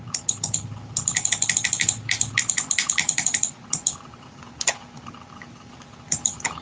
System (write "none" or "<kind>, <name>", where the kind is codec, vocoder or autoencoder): none